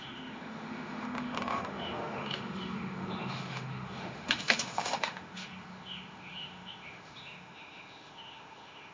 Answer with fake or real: fake